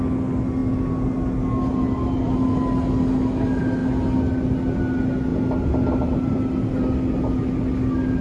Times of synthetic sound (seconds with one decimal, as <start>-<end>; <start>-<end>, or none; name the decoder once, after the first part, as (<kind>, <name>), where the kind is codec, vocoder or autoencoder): none